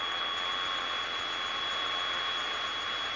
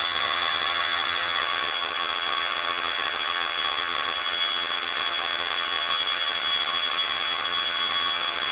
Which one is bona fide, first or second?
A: first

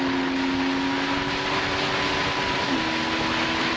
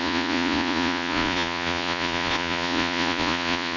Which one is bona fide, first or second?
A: first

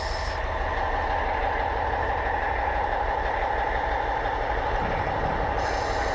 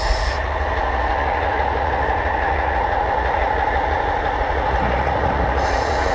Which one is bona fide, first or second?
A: first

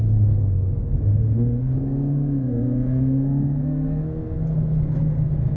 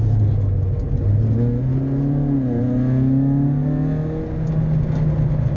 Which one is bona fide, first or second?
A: second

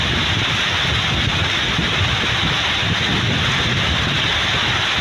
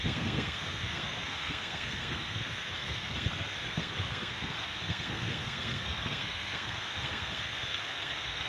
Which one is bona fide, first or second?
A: first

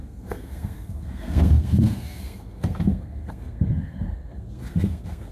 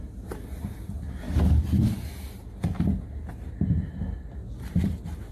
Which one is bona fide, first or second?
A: second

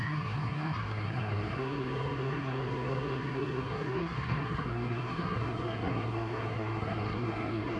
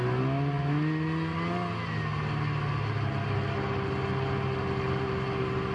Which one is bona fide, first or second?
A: second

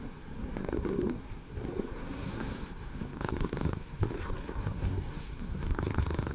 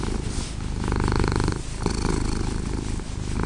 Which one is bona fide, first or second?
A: second